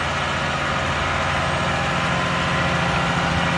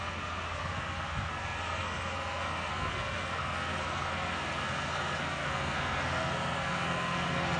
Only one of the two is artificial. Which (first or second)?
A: second